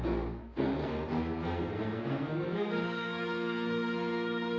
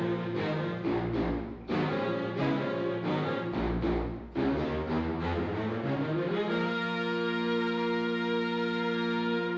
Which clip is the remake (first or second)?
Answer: first